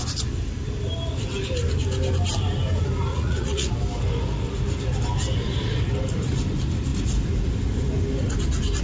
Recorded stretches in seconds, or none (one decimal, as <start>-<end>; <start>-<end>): 0.0-3.1; 3.7-8.8